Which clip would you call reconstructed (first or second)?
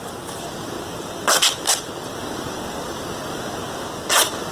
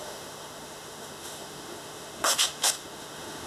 second